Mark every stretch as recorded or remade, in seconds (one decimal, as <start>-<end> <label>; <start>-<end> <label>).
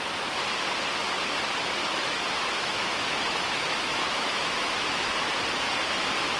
0.0-1.8 recorded; 1.8-5.3 remade; 5.3-6.4 recorded